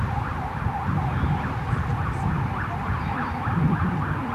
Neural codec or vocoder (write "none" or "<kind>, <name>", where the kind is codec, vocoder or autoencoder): none